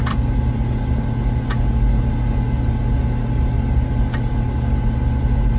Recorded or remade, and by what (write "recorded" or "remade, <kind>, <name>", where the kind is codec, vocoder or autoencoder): recorded